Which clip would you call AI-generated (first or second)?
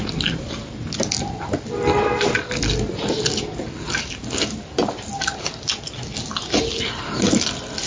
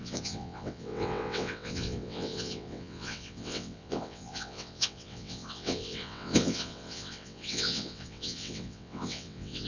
second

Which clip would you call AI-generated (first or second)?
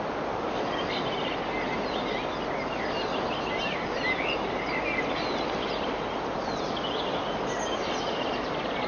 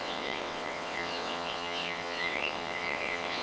second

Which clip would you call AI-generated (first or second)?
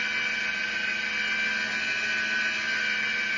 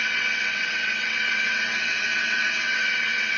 second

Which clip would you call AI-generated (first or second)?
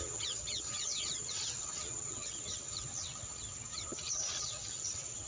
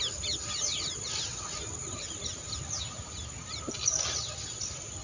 first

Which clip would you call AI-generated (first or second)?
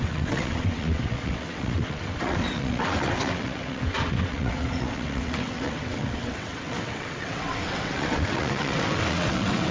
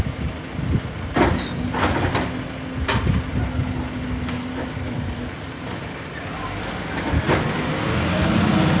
first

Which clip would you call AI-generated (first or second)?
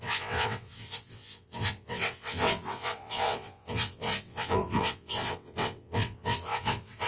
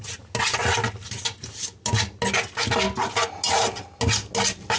first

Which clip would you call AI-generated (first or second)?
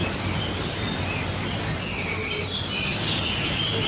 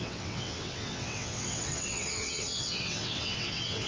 second